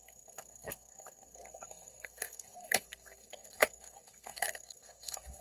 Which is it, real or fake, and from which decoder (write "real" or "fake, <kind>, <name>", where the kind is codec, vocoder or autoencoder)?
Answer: fake, codec, SNAC